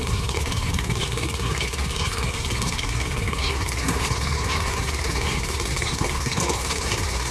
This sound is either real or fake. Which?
fake